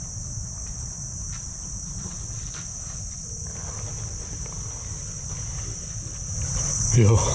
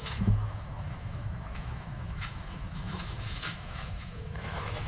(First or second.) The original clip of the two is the first